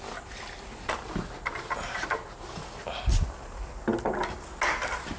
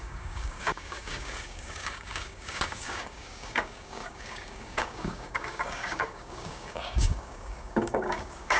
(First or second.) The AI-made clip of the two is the second